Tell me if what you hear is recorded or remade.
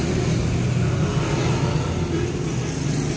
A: recorded